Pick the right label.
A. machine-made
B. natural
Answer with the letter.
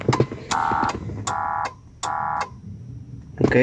B